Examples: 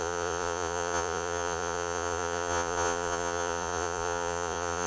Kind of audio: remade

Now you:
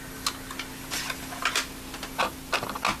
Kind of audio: recorded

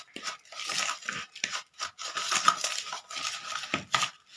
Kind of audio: recorded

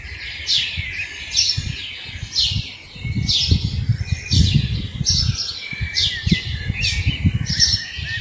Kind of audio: recorded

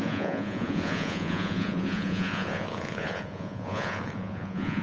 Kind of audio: remade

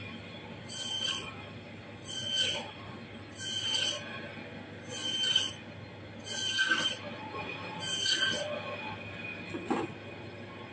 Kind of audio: recorded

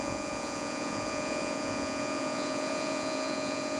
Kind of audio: remade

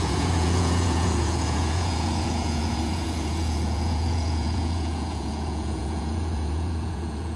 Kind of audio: remade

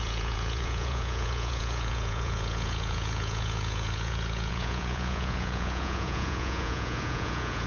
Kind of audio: remade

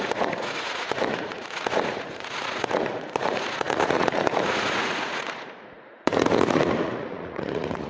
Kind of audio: remade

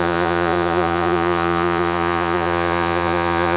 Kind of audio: remade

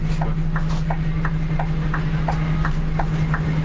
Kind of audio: recorded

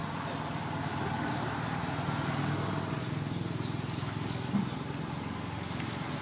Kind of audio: recorded